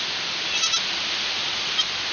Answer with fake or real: real